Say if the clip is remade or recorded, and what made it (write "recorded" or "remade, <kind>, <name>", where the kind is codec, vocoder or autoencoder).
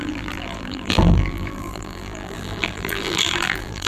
remade, vocoder, BigVGAN v2